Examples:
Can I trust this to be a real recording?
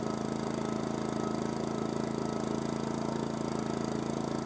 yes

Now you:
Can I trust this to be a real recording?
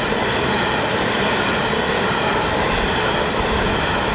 yes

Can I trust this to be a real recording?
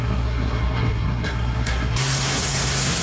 no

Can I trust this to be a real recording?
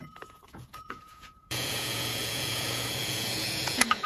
no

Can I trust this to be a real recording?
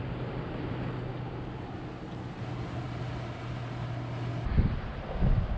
yes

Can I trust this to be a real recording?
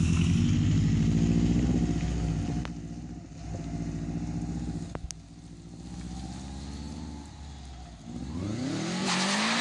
yes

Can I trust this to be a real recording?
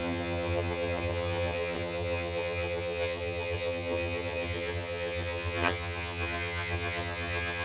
no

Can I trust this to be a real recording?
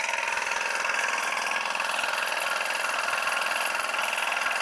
yes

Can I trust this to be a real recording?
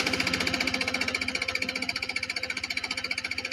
yes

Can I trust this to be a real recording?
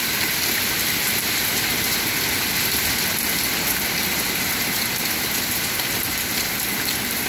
yes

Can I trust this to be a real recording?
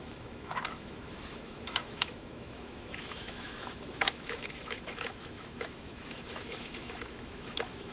no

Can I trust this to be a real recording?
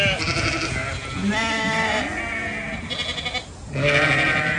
yes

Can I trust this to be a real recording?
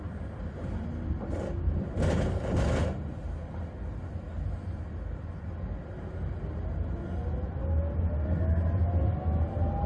yes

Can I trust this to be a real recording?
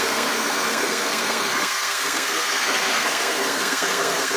no